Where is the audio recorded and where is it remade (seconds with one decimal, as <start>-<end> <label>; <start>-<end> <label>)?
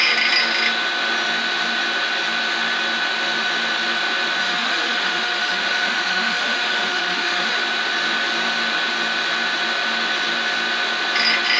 0.0-4.4 recorded; 4.4-7.6 remade; 7.6-11.6 recorded